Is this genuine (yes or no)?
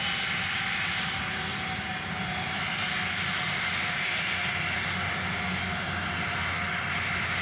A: yes